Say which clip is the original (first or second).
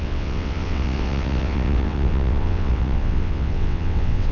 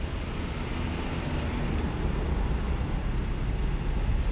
second